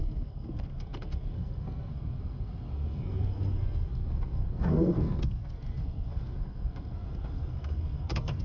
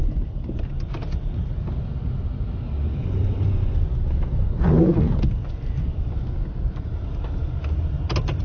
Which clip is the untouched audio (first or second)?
second